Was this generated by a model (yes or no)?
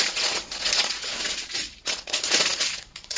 yes